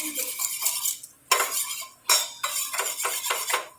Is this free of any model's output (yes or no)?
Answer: yes